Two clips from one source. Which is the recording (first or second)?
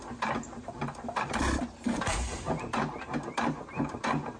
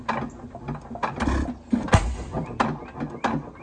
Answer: second